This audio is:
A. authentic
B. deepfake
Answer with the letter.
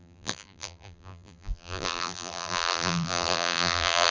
B